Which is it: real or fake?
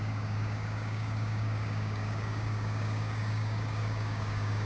fake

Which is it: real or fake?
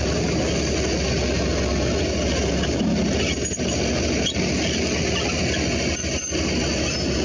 real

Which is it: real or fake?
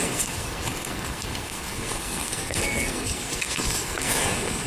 fake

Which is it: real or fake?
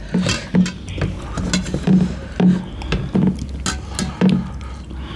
real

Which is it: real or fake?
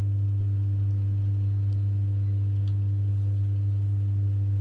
real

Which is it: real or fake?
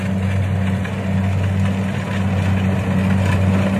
real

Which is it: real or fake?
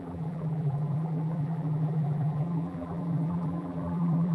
fake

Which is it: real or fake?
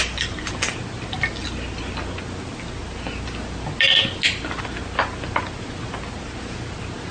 real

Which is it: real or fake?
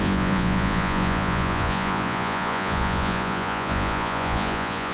fake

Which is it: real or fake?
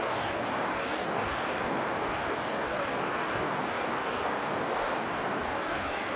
fake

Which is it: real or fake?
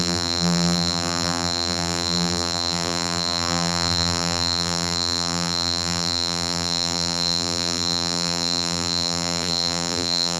fake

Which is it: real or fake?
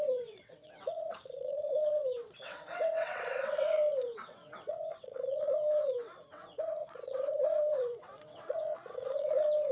fake